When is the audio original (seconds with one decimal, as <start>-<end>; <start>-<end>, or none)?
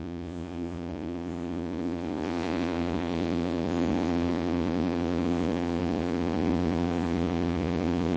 none